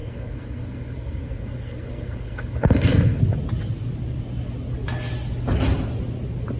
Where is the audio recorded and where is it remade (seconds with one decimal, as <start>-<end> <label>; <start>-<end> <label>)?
0.0-3.2 remade; 3.2-6.6 recorded